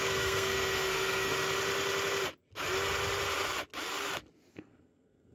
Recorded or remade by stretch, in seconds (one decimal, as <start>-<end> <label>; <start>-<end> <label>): 0.0-1.3 remade; 1.3-4.5 recorded; 4.5-5.3 remade